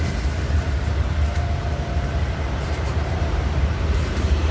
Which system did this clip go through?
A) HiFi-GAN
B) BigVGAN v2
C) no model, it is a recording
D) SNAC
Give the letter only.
B